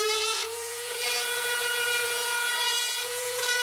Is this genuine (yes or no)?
no